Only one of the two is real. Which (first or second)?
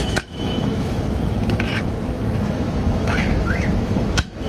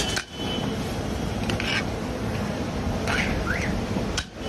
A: second